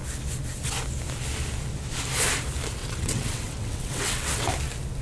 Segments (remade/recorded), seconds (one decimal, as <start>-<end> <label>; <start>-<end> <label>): 0.0-2.8 recorded; 2.8-4.5 remade; 4.5-5.0 recorded